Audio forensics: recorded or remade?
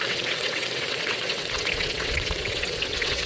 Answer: remade